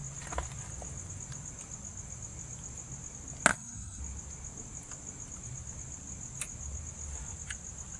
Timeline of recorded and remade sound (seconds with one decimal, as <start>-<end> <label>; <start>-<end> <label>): 0.0-3.5 recorded; 3.5-4.0 remade; 4.0-8.0 recorded